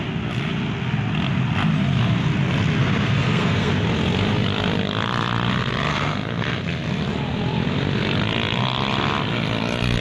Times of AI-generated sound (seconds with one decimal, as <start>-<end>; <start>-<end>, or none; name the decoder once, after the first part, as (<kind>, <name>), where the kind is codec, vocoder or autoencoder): 2.8-3.7 (codec, SNAC); 5.9-6.6